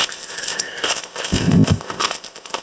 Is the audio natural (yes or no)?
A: no